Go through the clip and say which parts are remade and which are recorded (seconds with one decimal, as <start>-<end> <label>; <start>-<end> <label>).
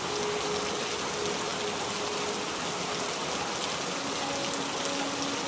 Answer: 0.0-5.5 recorded